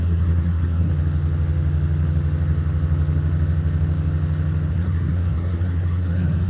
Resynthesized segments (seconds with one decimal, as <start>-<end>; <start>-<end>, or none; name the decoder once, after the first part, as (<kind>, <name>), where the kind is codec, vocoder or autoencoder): 0.0-0.9 (codec, SNAC); 4.7-6.5